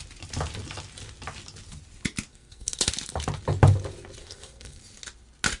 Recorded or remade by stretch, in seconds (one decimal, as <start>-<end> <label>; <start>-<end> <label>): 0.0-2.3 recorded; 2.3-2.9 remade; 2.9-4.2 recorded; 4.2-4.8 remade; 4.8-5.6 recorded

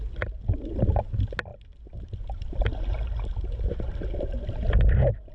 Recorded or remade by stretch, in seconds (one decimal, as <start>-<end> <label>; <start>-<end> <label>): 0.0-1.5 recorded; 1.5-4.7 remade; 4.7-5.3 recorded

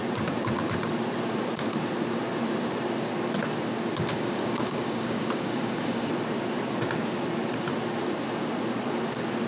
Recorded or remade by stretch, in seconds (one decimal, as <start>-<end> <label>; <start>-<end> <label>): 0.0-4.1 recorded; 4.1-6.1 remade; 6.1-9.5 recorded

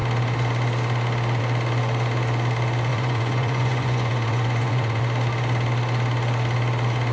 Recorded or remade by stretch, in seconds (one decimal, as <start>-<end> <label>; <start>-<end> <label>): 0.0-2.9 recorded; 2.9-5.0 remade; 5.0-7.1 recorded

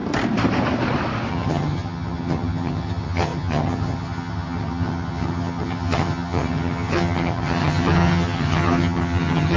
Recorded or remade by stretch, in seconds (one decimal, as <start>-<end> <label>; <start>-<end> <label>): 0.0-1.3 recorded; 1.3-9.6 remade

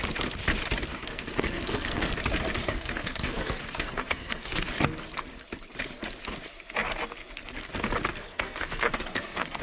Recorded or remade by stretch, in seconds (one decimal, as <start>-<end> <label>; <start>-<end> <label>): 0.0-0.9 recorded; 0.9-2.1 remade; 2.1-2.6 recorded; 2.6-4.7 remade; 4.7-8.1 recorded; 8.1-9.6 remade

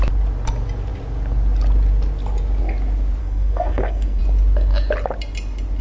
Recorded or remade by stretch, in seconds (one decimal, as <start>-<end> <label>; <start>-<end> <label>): 0.0-3.2 recorded; 3.2-4.2 remade; 4.2-5.8 recorded

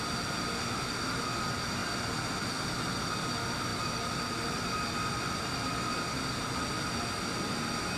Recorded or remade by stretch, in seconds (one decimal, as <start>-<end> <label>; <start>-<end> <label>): 0.0-3.7 recorded; 3.7-6.4 remade; 6.4-8.0 recorded